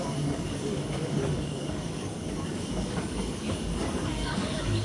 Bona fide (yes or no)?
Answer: no